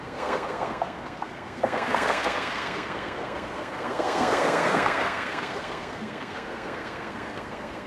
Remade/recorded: remade